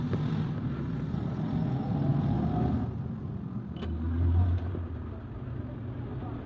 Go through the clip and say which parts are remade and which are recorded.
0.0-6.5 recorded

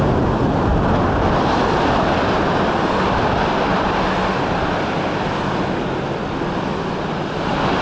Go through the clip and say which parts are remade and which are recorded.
0.0-7.8 recorded

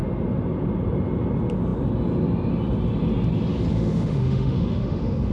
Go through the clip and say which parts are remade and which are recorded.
0.0-3.7 recorded; 3.7-5.3 remade

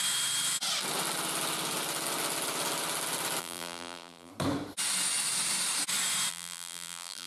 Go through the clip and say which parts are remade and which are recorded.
0.0-3.4 recorded; 3.4-4.3 remade; 4.3-6.3 recorded; 6.3-7.3 remade

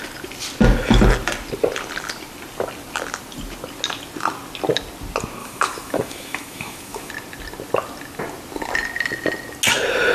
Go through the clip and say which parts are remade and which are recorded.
0.0-5.4 recorded; 5.4-7.1 remade; 7.1-10.1 recorded

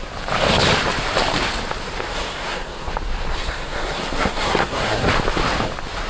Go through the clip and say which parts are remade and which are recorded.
0.0-2.1 recorded; 2.1-2.9 remade; 2.9-3.3 recorded; 3.3-5.1 remade; 5.1-6.1 recorded